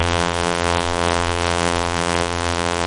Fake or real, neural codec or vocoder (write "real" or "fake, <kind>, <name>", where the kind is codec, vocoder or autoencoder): fake, vocoder, BigVGAN v2